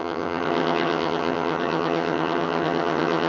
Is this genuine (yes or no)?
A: no